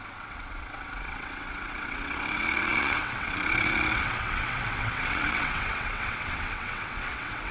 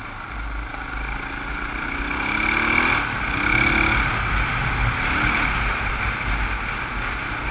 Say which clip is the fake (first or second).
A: first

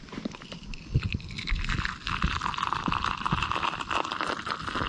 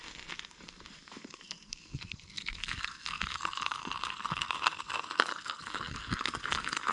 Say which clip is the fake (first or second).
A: second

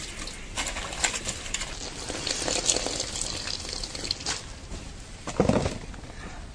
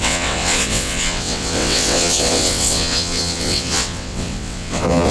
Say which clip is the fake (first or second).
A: second